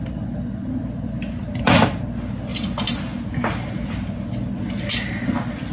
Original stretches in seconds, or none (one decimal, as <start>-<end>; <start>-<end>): 0.0-5.7